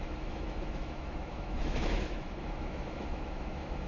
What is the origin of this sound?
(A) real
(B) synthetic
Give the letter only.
B